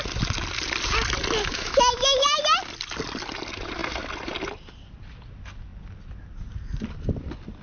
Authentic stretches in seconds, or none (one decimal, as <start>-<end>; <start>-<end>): 0.0-1.4; 2.4-7.6